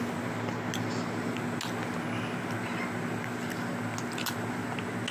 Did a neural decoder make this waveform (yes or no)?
no